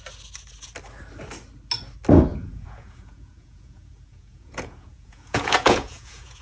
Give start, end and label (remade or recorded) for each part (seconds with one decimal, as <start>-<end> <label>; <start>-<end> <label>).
0.0-2.3 recorded; 2.3-6.4 remade